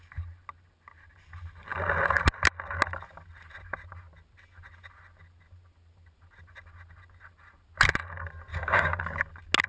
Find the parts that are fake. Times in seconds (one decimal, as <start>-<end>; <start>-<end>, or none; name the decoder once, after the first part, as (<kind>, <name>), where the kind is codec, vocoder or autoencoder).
8.5-9.0 (codec, DAC)